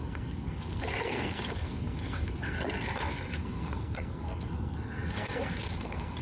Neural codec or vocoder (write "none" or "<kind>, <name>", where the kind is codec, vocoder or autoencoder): codec, SNAC